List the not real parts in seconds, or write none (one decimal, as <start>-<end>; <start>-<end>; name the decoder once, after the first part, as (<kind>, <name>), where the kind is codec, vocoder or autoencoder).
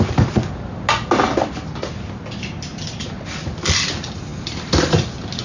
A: 2.7-3.3 (vocoder, BigVGAN v2); 4.3-5.4